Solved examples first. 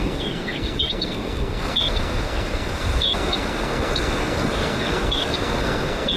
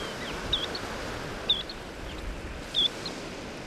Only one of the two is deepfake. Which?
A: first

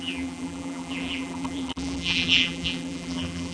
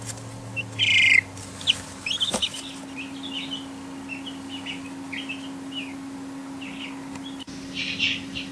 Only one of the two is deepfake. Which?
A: first